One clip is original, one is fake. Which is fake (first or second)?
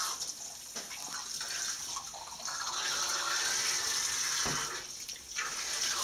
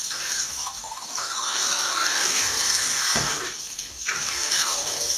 second